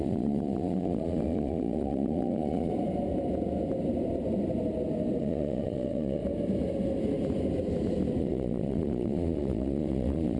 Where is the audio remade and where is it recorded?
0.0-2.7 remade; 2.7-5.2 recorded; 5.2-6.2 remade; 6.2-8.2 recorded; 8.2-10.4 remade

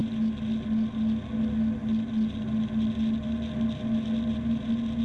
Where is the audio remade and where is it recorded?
0.0-5.0 recorded

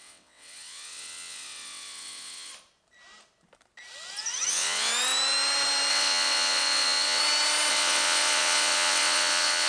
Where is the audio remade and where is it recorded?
0.0-2.5 remade; 2.5-4.5 recorded; 4.5-4.9 remade; 4.9-5.9 recorded; 5.9-7.2 remade; 7.2-7.7 recorded; 7.7-9.7 remade